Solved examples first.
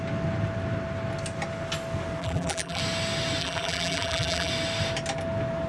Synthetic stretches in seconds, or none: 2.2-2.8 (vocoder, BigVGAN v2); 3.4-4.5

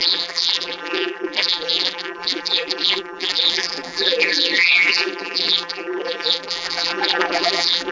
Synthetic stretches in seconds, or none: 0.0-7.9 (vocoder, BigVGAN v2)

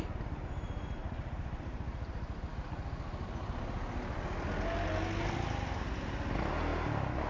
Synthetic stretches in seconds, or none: 1.0-2.1 (vocoder, BigVGAN v2)

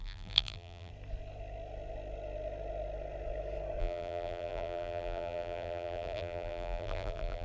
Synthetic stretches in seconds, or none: 0.0-0.9 (vocoder, BigVGAN v2); 3.8-7.4